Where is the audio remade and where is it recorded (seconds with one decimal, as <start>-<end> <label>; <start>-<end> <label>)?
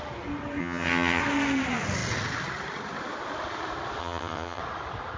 0.0-0.6 recorded; 0.6-1.2 remade; 1.2-4.0 recorded; 4.0-4.6 remade; 4.6-5.2 recorded